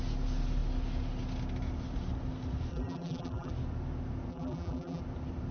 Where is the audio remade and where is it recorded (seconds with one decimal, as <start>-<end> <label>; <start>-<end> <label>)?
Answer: 0.0-2.7 recorded; 2.7-3.5 remade; 3.5-4.3 recorded; 4.3-5.0 remade; 5.0-5.5 recorded